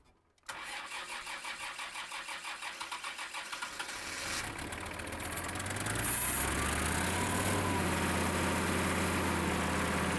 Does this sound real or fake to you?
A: real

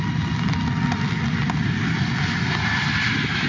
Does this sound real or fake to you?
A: real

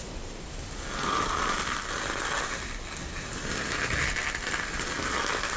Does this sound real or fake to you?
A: real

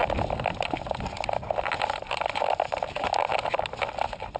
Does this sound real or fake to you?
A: real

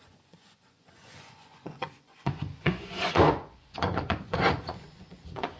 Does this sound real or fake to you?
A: fake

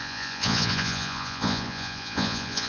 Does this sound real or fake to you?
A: fake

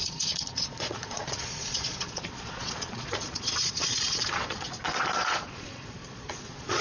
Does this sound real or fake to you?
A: fake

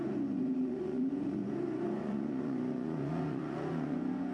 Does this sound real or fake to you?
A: fake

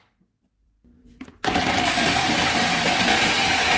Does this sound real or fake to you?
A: real